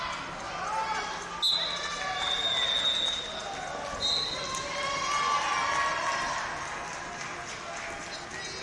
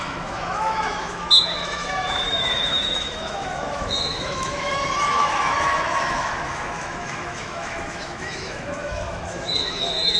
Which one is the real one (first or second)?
first